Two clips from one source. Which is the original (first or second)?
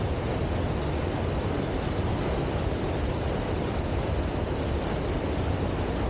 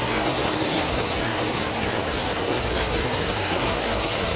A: first